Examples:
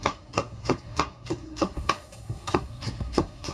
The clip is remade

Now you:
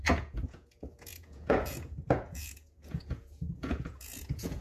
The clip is remade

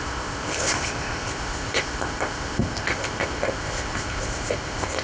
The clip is remade